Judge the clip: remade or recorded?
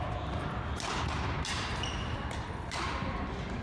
recorded